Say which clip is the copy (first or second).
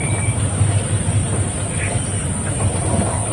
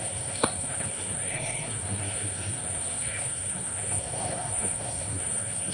second